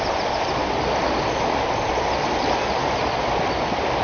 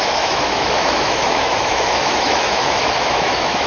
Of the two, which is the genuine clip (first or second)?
first